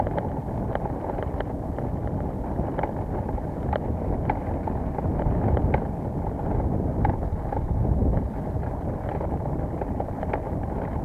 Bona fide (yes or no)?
yes